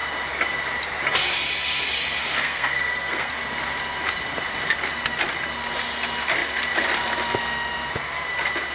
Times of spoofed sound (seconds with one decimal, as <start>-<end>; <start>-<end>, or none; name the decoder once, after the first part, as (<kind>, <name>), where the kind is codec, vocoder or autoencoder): 2.2-3.3 (codec, SNAC)